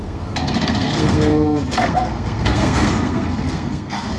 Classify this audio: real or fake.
fake